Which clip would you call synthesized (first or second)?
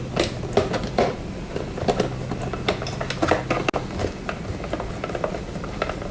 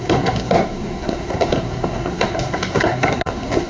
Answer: second